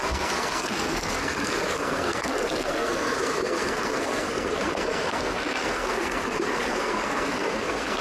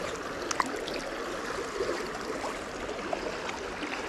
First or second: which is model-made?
first